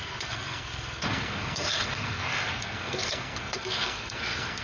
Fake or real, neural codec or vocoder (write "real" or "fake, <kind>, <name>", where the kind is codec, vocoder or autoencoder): fake, codec, SNAC